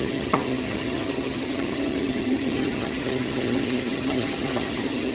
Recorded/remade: remade